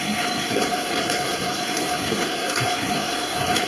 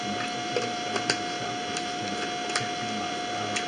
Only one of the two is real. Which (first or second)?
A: second